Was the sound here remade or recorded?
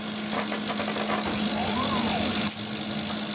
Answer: recorded